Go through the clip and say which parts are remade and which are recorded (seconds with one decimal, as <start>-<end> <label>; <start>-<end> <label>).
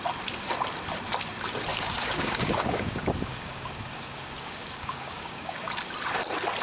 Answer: 0.0-1.7 recorded; 1.7-5.7 remade; 5.7-6.6 recorded